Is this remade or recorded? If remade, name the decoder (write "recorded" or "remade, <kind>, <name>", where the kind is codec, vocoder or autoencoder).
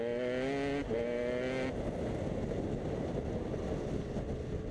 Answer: recorded